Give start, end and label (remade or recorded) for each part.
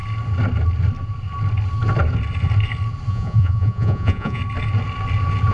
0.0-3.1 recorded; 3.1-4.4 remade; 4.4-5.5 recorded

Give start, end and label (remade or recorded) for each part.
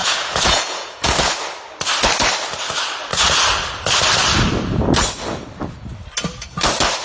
0.0-1.3 remade; 1.3-7.0 recorded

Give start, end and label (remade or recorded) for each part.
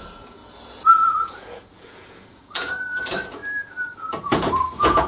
0.0-3.4 remade; 3.4-4.2 recorded; 4.2-5.1 remade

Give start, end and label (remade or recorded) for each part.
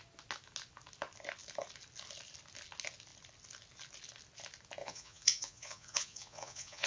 0.0-4.8 recorded; 4.8-6.9 remade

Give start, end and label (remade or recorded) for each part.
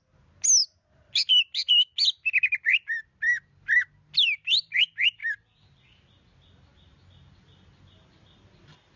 0.0-9.0 recorded